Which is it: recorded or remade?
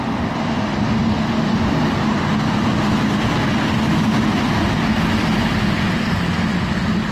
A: recorded